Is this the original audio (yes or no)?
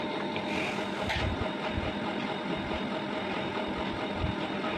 yes